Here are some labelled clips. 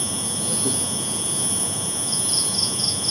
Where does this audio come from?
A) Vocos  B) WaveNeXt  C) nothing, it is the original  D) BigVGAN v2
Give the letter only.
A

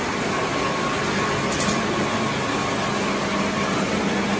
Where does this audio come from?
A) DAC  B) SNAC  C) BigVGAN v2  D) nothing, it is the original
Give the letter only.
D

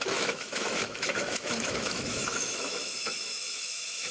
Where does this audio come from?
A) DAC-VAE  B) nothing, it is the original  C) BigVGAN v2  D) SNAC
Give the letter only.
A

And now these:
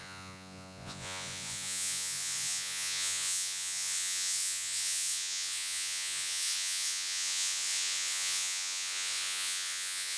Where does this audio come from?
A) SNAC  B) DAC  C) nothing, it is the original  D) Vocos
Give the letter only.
D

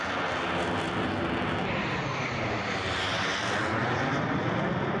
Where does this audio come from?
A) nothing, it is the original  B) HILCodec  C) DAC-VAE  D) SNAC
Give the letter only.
A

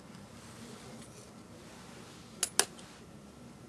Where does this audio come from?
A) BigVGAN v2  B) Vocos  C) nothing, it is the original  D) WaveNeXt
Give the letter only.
C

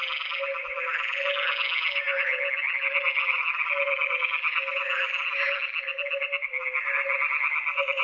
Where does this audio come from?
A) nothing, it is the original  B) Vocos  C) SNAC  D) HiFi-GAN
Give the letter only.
A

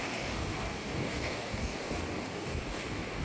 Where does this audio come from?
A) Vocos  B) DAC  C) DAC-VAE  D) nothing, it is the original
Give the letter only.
B